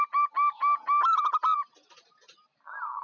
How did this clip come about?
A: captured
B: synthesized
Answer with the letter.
A